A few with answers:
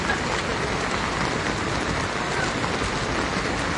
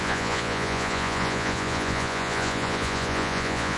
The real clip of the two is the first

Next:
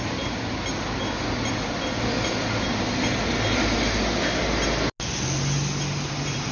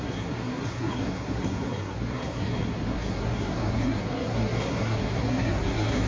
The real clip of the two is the first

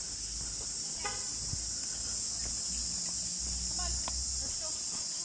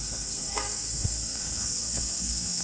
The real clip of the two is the first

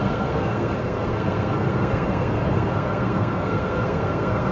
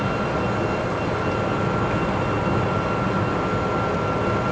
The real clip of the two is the second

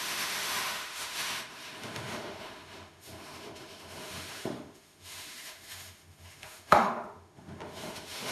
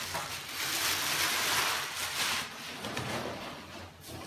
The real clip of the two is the second